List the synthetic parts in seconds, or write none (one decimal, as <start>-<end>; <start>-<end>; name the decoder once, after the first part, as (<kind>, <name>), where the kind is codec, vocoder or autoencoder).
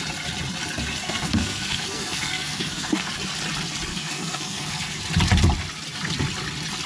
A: 1.0-3.1 (codec, SNAC); 3.9-5.0